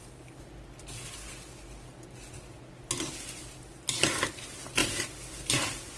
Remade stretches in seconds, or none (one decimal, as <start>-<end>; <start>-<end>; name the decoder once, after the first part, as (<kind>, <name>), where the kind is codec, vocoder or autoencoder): none